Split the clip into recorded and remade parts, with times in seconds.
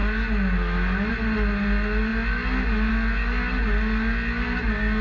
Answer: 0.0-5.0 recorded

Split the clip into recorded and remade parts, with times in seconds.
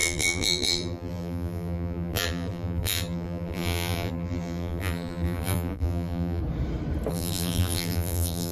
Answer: 0.0-6.4 remade; 6.4-7.1 recorded; 7.1-8.5 remade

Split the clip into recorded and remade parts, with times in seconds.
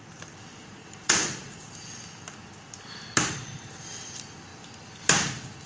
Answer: 0.0-0.6 recorded; 0.6-1.6 remade; 1.6-5.7 recorded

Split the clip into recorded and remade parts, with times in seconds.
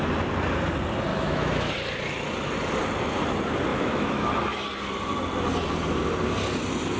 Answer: 0.0-1.1 recorded; 1.1-1.7 remade; 1.7-3.7 recorded; 3.7-4.3 remade; 4.3-7.0 recorded